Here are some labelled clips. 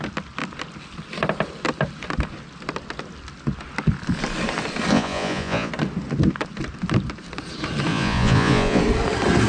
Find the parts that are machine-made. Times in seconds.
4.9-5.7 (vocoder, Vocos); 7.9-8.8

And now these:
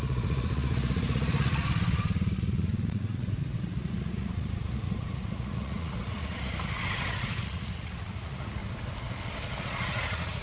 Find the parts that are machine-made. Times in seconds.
0.0-8.6 (vocoder, Vocos); 9.6-10.4